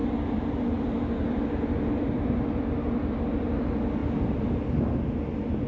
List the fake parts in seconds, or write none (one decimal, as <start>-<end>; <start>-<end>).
none